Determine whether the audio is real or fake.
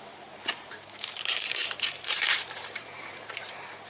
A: fake